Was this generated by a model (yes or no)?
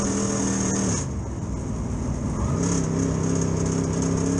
no